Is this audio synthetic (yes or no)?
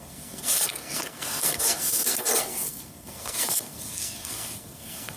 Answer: yes